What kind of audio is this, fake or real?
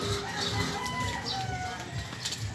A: real